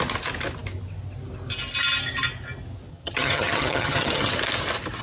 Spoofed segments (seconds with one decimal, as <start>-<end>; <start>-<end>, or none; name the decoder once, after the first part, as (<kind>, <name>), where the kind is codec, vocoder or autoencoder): 2.9-4.3 (vocoder, HiFi-GAN)